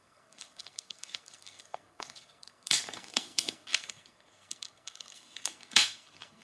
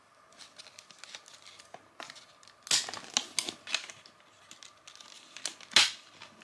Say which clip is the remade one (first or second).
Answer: first